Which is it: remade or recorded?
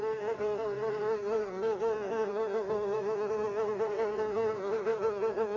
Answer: remade